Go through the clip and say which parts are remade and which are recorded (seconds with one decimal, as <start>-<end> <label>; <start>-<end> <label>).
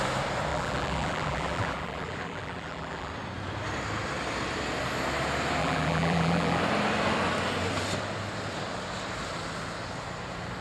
0.0-0.5 recorded; 0.5-3.1 remade; 3.1-5.6 recorded; 5.6-6.6 remade; 6.6-10.6 recorded